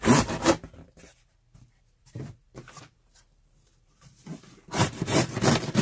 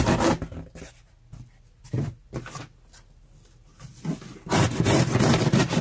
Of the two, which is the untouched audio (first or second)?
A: second